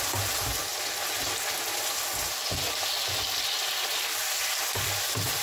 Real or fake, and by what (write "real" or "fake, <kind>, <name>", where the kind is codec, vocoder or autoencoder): real